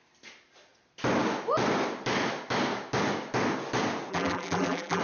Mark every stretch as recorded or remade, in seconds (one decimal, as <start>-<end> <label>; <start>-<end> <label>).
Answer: 0.0-4.1 recorded; 4.1-5.0 remade